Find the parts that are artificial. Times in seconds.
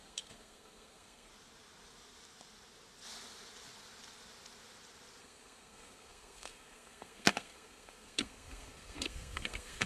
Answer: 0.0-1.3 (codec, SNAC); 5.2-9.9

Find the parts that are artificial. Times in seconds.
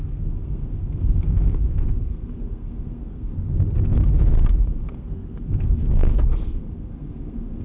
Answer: 0.0-3.3 (codec, SNAC); 4.6-7.6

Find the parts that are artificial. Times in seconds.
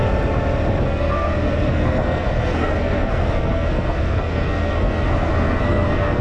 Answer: 0.8-6.2 (codec, SNAC)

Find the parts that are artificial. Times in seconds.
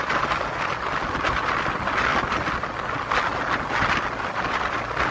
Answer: none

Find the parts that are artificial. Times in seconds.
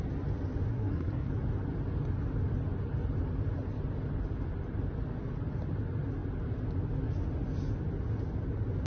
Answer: 0.7-1.3 (codec, SNAC)